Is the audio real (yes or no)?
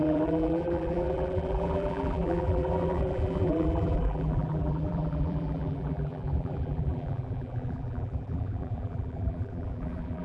no